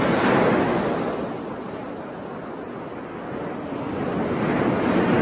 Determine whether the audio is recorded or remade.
recorded